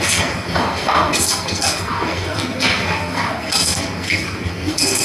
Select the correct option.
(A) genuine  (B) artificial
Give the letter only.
B